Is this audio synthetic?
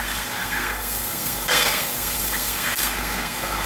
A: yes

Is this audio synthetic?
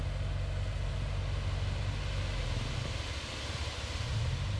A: no